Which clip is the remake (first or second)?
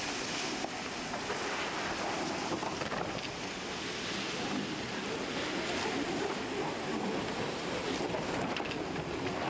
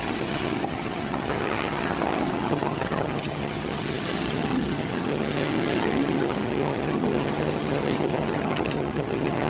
second